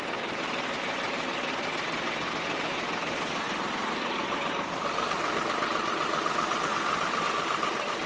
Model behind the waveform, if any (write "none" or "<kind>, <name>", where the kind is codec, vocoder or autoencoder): vocoder, BigVGAN v2